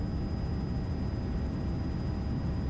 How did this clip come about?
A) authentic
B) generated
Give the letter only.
A